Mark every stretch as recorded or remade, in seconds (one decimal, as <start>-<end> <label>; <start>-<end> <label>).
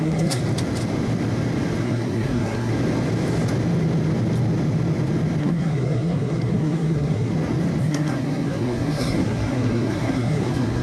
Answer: 0.0-0.4 remade; 0.4-1.8 recorded; 1.8-2.7 remade; 2.7-5.4 recorded; 5.4-7.3 remade; 7.3-7.8 recorded; 7.8-10.8 remade